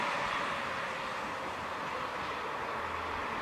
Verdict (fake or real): real